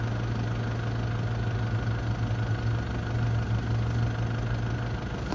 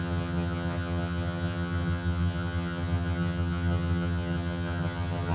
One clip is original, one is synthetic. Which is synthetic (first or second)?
second